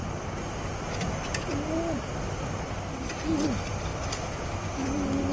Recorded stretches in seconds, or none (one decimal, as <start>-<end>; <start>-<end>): 0.0-5.3